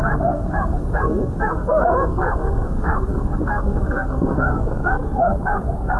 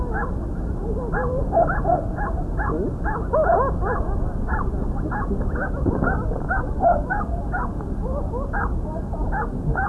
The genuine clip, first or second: second